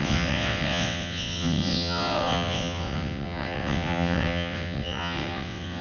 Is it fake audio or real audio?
fake